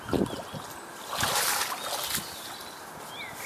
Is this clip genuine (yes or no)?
yes